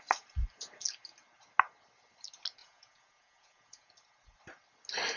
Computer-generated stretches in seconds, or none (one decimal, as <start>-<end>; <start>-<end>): 2.6-3.9